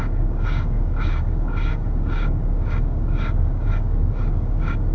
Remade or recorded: remade